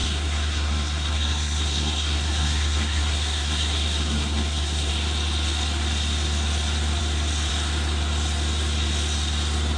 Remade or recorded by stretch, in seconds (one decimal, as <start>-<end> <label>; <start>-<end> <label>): 0.0-4.9 remade; 4.9-9.8 recorded